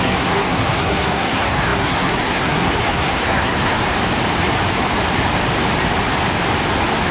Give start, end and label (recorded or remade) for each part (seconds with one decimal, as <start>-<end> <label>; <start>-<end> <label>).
0.0-3.8 remade; 3.8-7.1 recorded